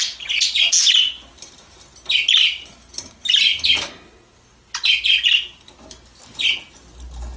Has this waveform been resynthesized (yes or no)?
no